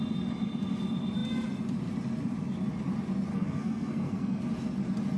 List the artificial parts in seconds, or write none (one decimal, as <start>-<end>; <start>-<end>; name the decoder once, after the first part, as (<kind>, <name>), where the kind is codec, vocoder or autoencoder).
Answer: 3.3-4.4 (codec, SNAC)